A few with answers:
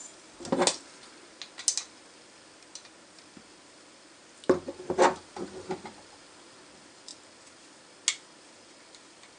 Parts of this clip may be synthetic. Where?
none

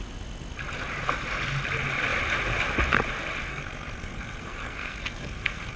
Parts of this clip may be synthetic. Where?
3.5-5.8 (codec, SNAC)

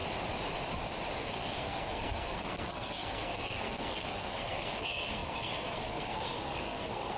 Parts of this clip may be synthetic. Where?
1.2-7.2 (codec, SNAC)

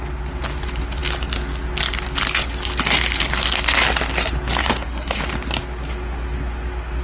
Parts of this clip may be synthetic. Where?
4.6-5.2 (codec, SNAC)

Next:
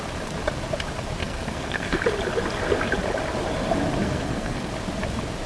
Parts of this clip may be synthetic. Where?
1.2-2.0 (codec, SNAC); 4.0-4.7

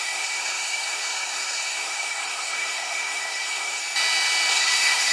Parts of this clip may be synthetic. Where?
0.0-3.8 (codec, SNAC); 4.5-5.1